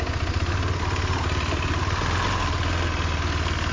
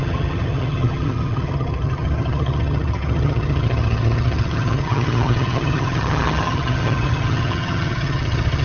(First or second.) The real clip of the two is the first